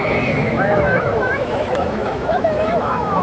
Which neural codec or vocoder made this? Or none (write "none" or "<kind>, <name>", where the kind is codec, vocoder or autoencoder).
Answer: autoencoder, DAC-VAE